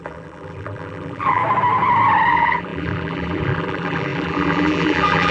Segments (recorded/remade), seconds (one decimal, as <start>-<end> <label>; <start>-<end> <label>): 0.0-1.4 remade; 1.4-2.3 recorded; 2.3-5.3 remade